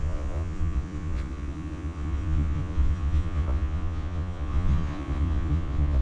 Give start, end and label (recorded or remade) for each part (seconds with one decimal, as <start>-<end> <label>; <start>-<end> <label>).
0.0-6.0 remade